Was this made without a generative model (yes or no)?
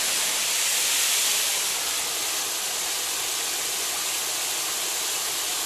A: yes